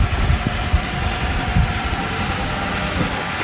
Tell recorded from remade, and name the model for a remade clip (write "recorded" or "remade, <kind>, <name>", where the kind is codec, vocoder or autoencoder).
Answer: recorded